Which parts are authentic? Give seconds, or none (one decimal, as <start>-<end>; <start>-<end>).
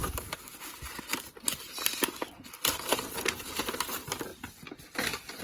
0.0-1.3; 1.9-3.6; 4.3-5.4